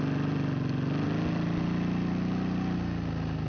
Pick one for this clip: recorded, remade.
recorded